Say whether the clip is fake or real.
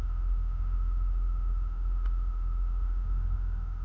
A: fake